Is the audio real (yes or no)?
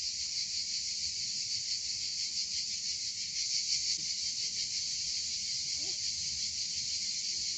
yes